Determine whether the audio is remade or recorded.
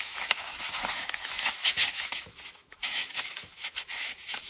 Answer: remade